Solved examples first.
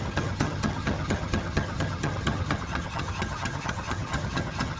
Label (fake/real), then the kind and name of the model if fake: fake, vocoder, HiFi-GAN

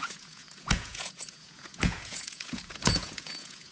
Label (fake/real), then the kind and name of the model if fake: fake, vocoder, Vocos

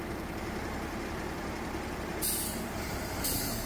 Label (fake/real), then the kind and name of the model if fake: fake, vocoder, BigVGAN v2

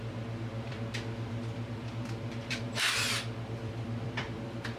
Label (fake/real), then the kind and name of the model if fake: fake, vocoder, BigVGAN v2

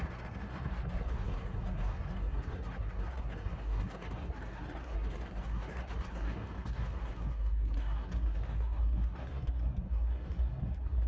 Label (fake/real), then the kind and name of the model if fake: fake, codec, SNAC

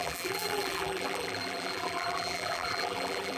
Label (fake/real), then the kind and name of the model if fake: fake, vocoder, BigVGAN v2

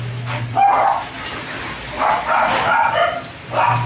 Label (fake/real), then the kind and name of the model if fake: real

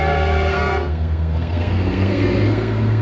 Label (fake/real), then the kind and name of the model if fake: fake, codec, SNAC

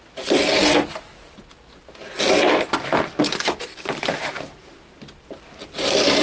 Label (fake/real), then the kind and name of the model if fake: real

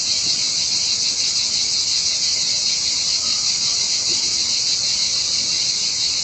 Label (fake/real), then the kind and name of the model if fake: real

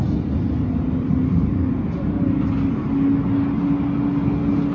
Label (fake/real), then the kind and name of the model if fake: real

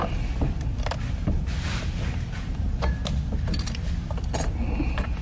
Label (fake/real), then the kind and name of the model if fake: real